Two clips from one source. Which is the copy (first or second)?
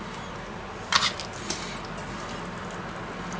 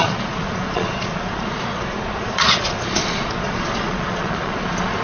second